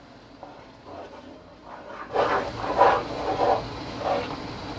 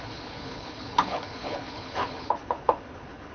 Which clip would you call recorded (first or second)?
first